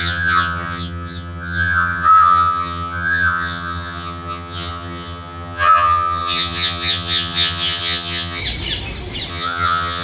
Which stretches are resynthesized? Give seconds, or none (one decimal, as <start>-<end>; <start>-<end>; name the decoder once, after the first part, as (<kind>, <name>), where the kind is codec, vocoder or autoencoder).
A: 0.0-8.4 (vocoder, HiFi-GAN); 9.3-10.0